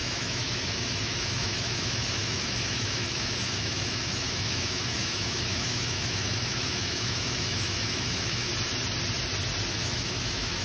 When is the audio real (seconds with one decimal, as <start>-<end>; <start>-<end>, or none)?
8.5-9.7